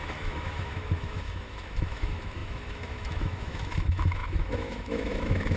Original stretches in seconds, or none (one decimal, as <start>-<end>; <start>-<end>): none